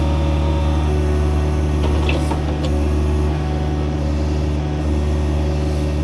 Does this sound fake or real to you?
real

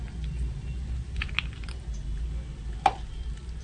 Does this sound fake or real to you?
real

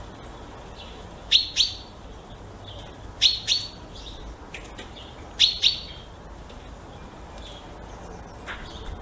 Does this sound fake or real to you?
real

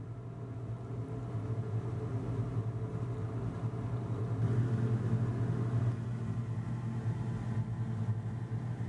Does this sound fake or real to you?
real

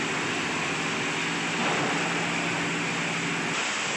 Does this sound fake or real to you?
real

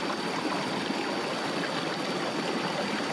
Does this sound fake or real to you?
real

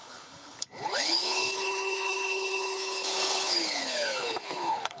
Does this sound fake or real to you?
fake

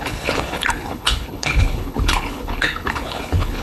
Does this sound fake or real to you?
fake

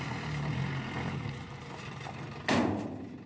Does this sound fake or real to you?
real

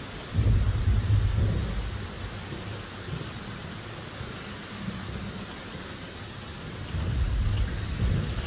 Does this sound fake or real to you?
real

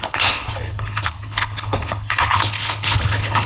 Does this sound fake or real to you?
fake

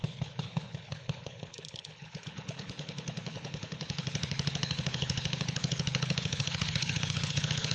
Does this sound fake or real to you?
fake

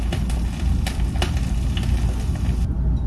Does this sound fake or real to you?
real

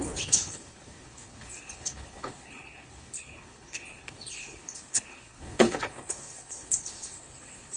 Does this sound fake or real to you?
fake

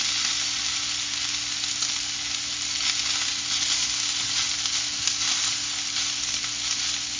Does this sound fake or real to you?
real